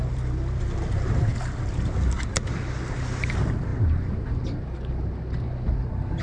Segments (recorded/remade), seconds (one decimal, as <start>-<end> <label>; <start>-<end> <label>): 0.0-6.2 recorded